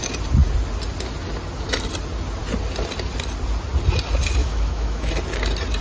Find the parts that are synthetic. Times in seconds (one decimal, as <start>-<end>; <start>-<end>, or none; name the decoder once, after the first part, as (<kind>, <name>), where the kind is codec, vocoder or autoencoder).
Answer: 4.4-5.1 (autoencoder, DAC-VAE)